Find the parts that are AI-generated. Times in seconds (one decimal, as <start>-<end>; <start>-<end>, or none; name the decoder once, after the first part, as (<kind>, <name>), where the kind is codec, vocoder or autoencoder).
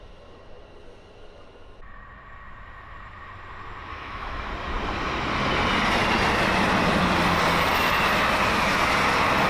3.9-4.5 (autoencoder, DAC-VAE)